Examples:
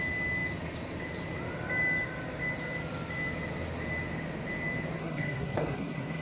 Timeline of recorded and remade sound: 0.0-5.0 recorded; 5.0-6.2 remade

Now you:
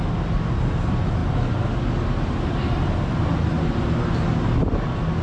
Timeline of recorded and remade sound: 0.0-5.2 recorded

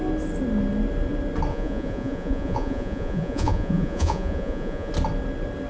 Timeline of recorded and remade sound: 0.0-1.5 recorded; 1.5-4.9 remade; 4.9-5.7 recorded